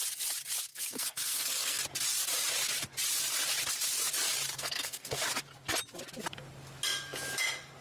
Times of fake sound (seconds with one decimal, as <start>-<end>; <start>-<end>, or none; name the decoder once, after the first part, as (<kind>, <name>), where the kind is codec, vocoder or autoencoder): 0.7-1.8 (codec, SNAC); 4.5-5.2